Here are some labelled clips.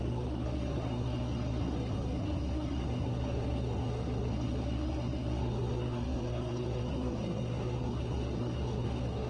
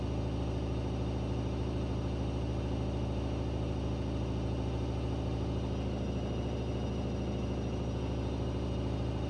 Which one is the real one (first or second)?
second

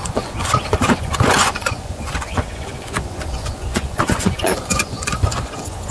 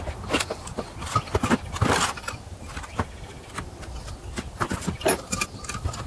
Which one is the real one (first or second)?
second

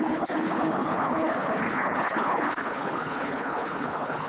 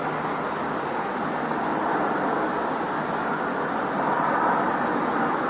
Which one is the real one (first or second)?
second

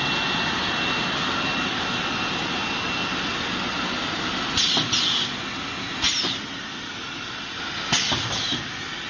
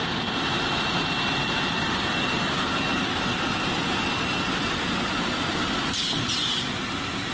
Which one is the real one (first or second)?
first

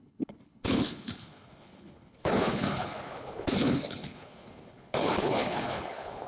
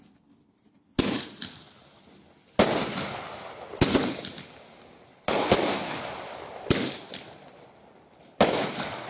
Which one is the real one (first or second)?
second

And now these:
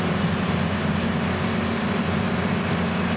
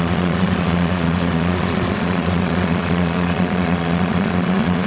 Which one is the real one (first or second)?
first